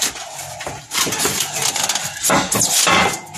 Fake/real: real